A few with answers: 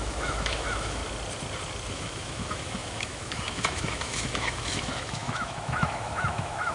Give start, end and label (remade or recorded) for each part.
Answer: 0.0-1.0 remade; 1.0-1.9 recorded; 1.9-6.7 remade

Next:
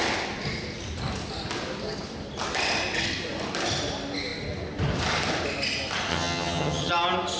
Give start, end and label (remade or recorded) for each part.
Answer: 0.0-6.1 recorded; 6.1-6.9 remade; 6.9-7.4 recorded

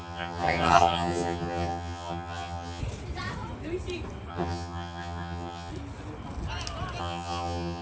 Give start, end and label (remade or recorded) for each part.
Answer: 0.0-2.8 remade; 2.8-4.3 recorded; 4.3-5.7 remade; 5.7-7.0 recorded; 7.0-7.8 remade

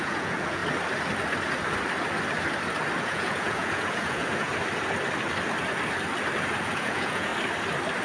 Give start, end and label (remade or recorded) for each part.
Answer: 0.0-0.6 remade; 0.6-3.0 recorded; 3.0-4.5 remade; 4.5-6.6 recorded; 6.6-7.3 remade; 7.3-8.0 recorded

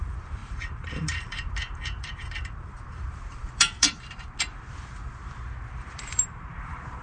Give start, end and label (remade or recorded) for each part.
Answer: 0.0-7.0 remade

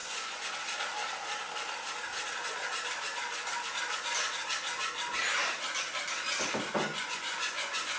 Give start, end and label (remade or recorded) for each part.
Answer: 0.0-0.5 remade; 0.5-6.9 recorded; 6.9-8.0 remade

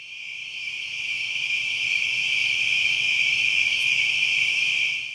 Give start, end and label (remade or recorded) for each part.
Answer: 0.0-0.5 recorded; 0.5-3.0 remade; 3.0-3.4 recorded; 3.4-4.6 remade; 4.6-5.1 recorded